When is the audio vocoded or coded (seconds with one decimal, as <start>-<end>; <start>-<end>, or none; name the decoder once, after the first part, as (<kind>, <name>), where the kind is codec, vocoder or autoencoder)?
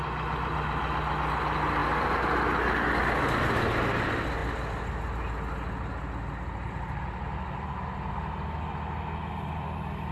none